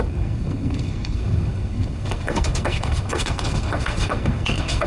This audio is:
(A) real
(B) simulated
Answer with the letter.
B